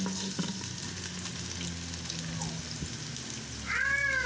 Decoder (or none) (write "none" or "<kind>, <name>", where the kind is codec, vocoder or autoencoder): none